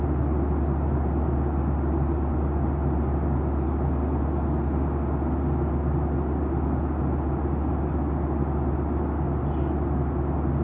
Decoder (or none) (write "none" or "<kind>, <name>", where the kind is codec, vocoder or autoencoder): none